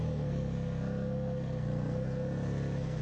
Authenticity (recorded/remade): remade